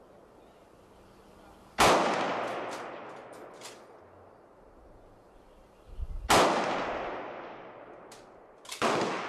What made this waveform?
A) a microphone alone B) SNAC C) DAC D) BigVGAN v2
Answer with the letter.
A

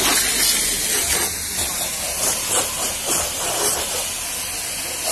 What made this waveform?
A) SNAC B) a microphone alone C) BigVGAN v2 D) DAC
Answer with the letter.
B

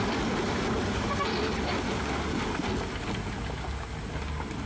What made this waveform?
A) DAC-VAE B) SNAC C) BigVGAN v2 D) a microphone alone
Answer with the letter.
D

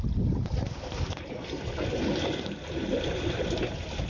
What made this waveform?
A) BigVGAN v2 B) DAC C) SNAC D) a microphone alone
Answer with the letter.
D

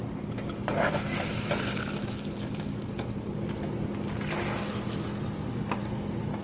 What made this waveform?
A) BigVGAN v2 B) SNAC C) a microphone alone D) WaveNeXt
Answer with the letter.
C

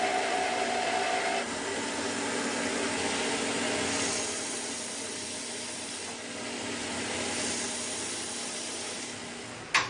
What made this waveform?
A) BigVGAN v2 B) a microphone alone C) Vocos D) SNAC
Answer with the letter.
B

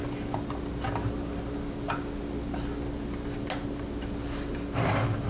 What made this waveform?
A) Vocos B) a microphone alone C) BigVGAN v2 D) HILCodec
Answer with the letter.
B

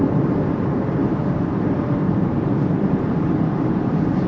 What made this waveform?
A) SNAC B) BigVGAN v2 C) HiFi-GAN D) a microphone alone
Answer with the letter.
B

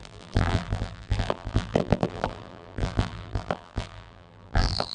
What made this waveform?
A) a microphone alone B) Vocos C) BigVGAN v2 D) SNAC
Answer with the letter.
C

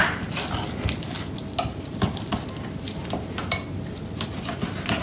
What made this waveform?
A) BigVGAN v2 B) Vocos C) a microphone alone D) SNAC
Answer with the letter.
C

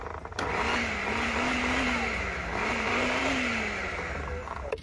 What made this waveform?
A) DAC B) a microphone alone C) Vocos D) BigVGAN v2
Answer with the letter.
D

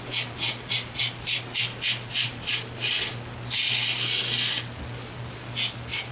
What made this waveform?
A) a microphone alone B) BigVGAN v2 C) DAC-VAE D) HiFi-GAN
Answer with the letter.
A